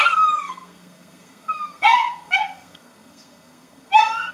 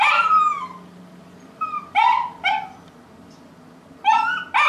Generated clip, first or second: first